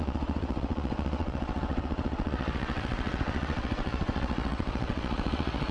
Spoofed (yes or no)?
yes